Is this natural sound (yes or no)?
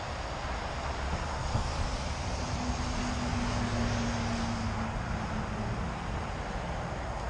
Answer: yes